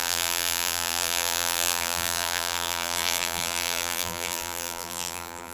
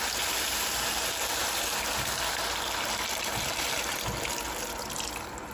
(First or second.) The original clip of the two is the second